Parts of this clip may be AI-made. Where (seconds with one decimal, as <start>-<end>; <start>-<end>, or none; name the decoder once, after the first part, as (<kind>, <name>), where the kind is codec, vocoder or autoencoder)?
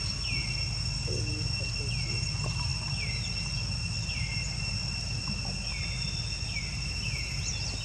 none